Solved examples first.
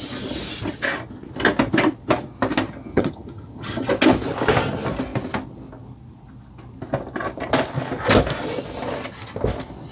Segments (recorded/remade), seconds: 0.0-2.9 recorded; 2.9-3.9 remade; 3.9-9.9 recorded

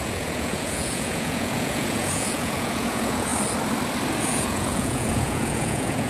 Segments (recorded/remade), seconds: 0.0-3.3 remade; 3.3-4.2 recorded; 4.2-6.1 remade

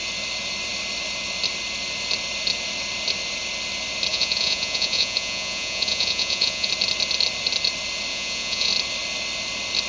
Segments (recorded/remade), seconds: 0.0-4.1 recorded; 4.1-6.7 remade; 6.7-8.1 recorded; 8.1-8.7 remade; 8.7-9.9 recorded